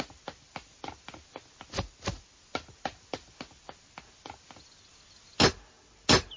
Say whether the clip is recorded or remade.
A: recorded